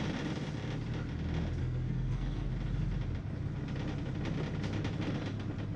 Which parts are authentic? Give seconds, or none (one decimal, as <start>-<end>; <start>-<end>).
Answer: 0.0-1.6; 2.5-5.8